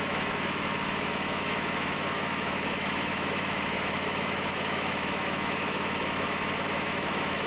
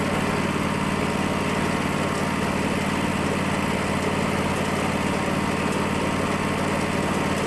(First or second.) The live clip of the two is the second